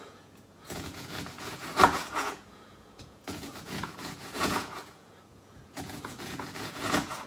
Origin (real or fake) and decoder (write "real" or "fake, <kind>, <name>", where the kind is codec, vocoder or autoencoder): fake, vocoder, Vocos